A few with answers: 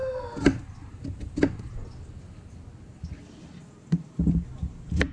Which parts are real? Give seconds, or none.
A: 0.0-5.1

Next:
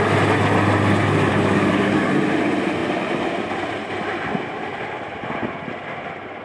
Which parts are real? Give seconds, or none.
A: 0.0-1.3; 2.1-6.4